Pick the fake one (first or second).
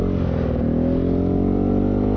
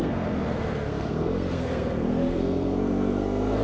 second